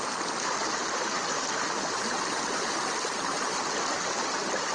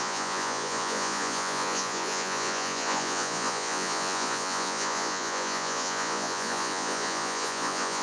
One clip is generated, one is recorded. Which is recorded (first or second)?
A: first